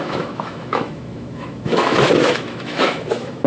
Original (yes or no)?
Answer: no